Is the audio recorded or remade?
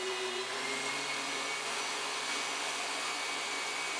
remade